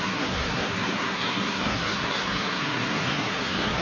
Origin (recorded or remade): remade